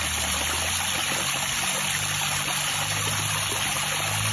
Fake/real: real